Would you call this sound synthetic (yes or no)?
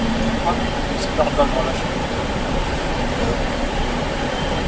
no